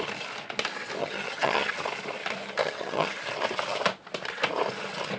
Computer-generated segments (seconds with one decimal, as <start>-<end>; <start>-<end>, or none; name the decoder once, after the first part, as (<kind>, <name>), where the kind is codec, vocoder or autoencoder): 1.0-1.8 (vocoder, HiFi-GAN); 2.6-3.2